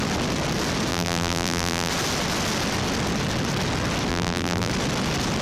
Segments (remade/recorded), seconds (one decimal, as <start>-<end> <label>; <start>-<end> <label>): 0.0-0.9 recorded; 0.9-1.9 remade; 1.9-4.1 recorded; 4.1-4.7 remade; 4.7-5.4 recorded

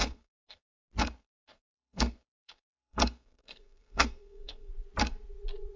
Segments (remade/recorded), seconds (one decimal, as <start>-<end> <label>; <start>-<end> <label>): 0.0-0.6 remade; 0.6-1.2 recorded; 1.2-4.7 remade; 4.7-5.8 recorded

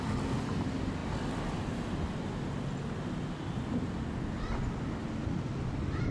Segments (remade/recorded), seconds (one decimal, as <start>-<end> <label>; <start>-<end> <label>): 0.0-6.1 recorded

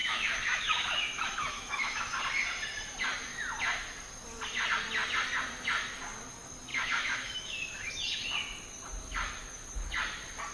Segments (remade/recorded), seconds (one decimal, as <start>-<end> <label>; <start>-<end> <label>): 0.0-2.2 remade; 2.2-6.7 recorded; 6.7-7.9 remade; 7.9-10.5 recorded

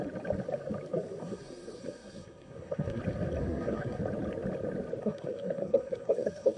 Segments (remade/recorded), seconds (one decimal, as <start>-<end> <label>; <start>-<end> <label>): 0.0-1.2 recorded; 1.2-3.0 remade; 3.0-3.4 recorded; 3.4-4.0 remade; 4.0-5.0 recorded; 5.0-6.6 remade